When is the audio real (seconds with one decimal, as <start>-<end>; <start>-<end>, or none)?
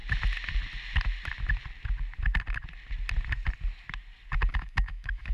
0.0-4.5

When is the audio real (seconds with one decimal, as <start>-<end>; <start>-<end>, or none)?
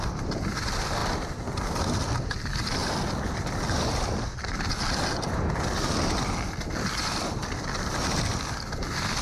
0.0-2.8; 4.7-9.2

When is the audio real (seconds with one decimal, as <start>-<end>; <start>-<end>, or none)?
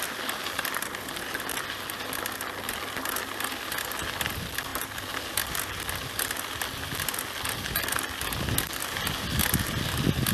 0.0-10.3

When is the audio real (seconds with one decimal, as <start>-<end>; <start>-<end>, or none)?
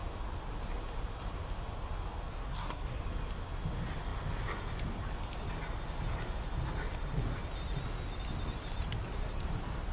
0.0-2.3; 3.0-9.9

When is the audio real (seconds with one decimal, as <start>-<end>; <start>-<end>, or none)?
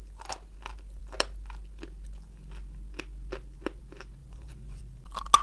0.0-4.2; 4.8-5.4